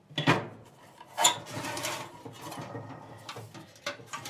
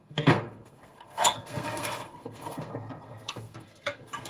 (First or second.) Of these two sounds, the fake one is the second